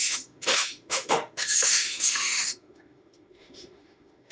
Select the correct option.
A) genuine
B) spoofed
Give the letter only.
B